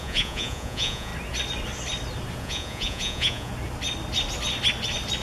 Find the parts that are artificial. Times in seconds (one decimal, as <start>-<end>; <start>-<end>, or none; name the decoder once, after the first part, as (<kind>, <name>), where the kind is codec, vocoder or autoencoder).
0.0-1.1 (vocoder, Vocos); 2.4-3.5

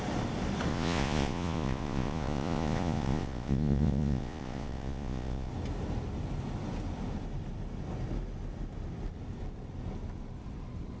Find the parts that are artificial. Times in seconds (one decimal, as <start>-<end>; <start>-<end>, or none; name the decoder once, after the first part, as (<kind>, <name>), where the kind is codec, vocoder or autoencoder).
0.7-5.5 (vocoder, Vocos)

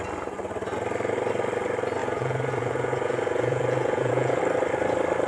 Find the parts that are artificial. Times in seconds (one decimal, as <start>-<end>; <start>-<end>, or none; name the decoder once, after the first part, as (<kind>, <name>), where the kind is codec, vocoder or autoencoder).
2.0-4.4 (vocoder, Vocos)

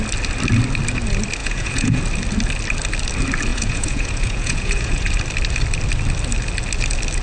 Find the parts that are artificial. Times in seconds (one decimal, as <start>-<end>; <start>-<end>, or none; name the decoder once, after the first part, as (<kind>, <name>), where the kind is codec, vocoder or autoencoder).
1.4-2.0 (vocoder, Vocos); 3.5-5.1

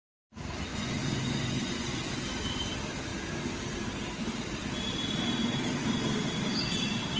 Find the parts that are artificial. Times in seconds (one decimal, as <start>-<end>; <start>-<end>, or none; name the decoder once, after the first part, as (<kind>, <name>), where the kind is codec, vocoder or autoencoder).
0.7-2.1 (vocoder, Vocos)

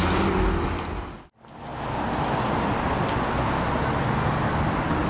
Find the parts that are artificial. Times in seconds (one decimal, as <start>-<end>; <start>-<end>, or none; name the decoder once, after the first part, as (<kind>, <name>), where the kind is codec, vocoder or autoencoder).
none

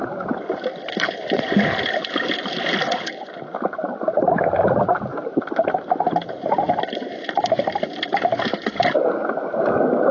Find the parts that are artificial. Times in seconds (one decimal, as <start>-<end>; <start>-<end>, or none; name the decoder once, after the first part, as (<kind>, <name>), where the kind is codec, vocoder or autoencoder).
none